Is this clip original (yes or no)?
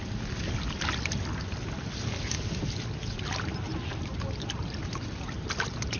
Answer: yes